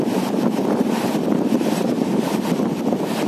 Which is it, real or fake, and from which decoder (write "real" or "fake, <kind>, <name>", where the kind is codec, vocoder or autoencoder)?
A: real